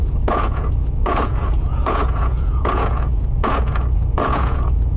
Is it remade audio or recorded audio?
remade